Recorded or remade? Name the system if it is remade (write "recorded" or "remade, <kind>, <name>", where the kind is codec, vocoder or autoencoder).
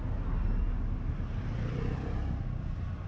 recorded